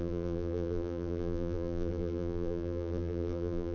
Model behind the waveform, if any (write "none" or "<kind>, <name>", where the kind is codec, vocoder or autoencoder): vocoder, BigVGAN v2